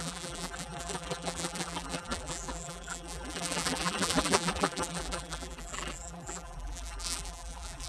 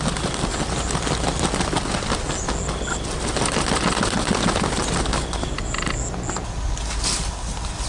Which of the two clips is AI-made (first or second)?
first